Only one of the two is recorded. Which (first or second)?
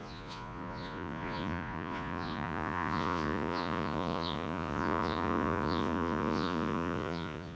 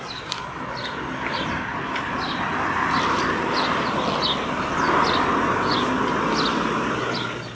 second